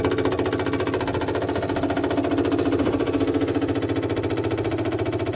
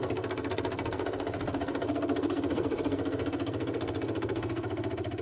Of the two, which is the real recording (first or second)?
first